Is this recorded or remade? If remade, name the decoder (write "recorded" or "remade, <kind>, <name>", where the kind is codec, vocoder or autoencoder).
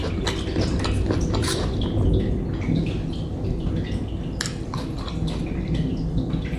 recorded